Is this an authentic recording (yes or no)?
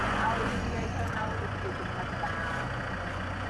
no